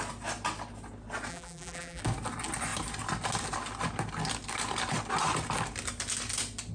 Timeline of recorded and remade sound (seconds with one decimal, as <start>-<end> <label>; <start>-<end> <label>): 0.0-1.3 recorded; 1.3-2.0 remade; 2.0-6.7 recorded